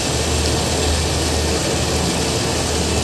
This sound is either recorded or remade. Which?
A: recorded